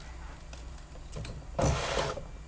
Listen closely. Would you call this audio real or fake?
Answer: real